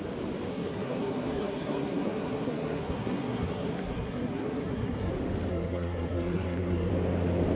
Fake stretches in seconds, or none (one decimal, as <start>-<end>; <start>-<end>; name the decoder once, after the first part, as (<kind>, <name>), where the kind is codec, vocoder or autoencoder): 0.5-5.1 (codec, SNAC); 5.5-6.9